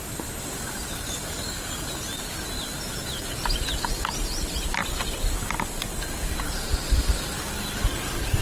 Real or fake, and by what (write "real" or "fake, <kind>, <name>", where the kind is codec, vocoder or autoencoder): real